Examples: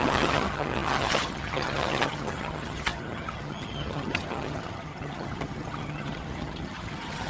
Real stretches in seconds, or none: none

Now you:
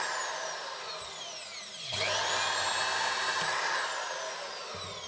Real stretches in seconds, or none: 0.0-5.1

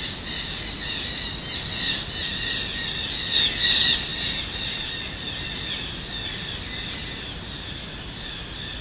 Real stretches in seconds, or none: 0.0-8.8

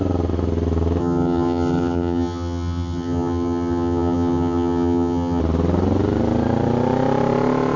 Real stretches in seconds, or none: 0.0-1.0; 5.4-7.8

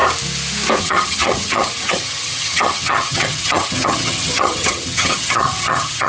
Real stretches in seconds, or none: 0.0-0.8